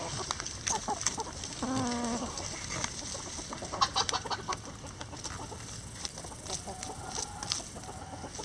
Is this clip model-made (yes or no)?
no